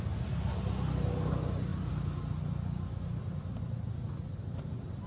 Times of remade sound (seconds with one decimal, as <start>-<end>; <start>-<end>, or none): none